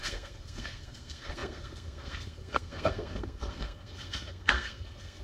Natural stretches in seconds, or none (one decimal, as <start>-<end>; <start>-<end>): none